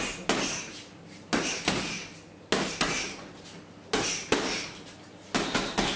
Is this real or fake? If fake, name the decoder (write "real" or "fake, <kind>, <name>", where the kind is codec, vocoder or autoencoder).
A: real